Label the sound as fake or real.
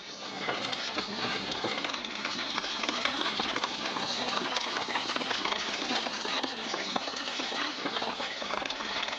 fake